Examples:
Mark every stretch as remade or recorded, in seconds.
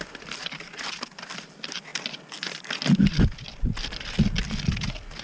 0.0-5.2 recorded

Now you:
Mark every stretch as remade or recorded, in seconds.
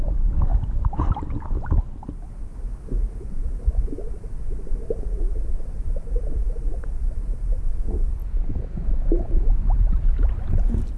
0.0-0.5 remade; 0.5-1.1 recorded; 1.1-2.5 remade; 2.5-3.2 recorded; 3.2-8.2 remade; 8.2-8.9 recorded; 8.9-11.0 remade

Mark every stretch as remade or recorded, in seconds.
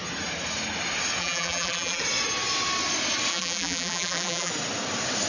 0.0-1.2 recorded; 1.2-2.0 remade; 2.0-3.3 recorded; 3.3-4.5 remade; 4.5-5.3 recorded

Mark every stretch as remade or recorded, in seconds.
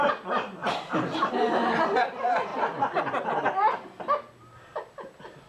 0.0-0.6 recorded; 0.6-1.3 remade; 1.3-5.5 recorded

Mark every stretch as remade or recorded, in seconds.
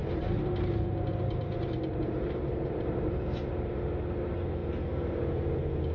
0.0-3.5 remade; 3.5-5.9 recorded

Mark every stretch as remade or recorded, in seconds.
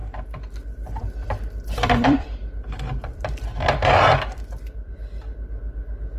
0.0-6.2 remade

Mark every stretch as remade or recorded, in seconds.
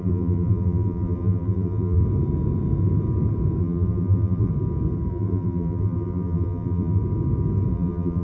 0.0-2.0 remade; 2.0-3.6 recorded; 3.6-4.5 remade; 4.5-5.1 recorded; 5.1-7.0 remade; 7.0-7.7 recorded; 7.7-8.2 remade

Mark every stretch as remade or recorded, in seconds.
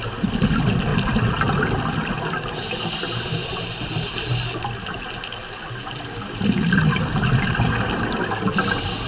0.0-9.1 recorded